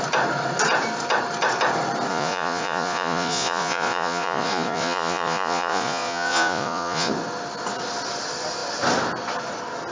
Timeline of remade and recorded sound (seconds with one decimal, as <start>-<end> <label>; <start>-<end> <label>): 0.0-2.1 recorded; 2.1-7.1 remade; 7.1-9.9 recorded